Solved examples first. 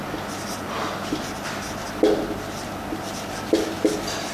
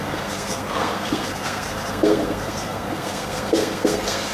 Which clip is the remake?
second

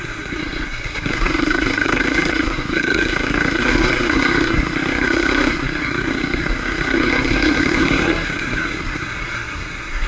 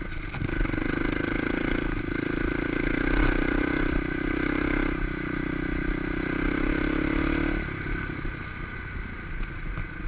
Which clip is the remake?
first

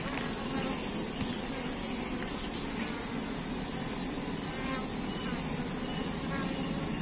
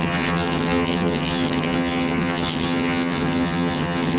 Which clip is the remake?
second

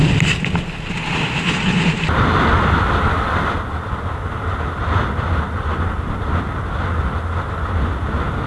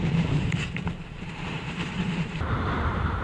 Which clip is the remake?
second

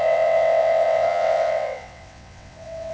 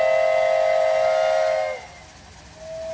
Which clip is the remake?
first